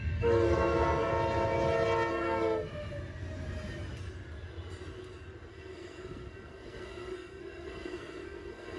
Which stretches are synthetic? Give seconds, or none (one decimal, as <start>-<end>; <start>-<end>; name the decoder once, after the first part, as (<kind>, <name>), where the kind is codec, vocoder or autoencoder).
0.0-1.1 (codec, SNAC); 2.1-2.7; 5.5-8.8